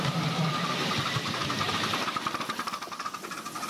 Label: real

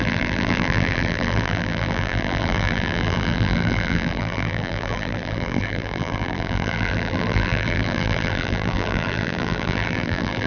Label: fake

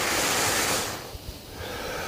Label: real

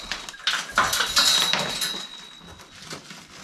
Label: real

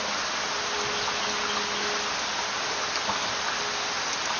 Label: real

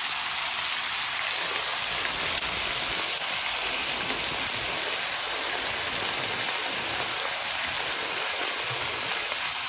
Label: real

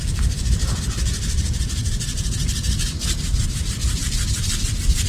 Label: fake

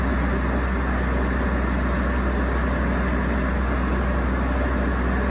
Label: real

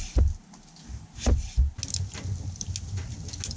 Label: real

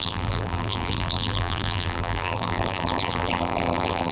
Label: fake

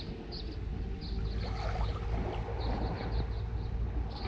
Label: real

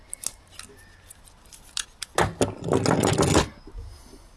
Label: real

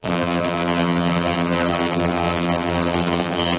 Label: fake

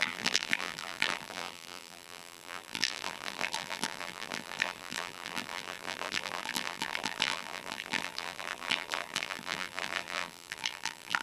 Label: fake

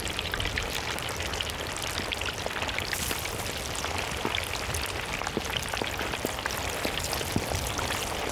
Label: real